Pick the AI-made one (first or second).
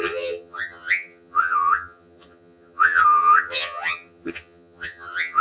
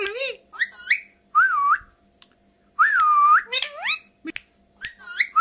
first